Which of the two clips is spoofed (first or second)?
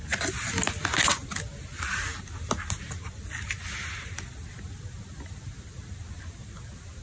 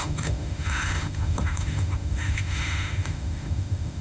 second